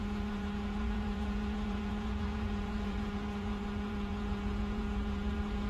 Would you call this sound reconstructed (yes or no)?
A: yes